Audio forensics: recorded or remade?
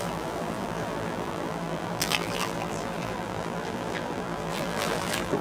remade